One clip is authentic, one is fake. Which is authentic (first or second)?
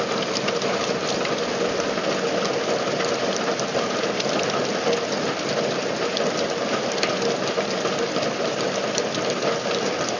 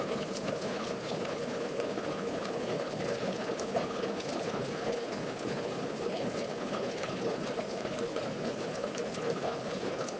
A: first